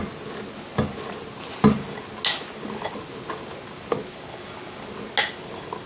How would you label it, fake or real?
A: real